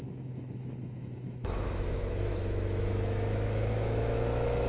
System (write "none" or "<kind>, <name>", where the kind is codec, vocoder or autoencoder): autoencoder, DAC-VAE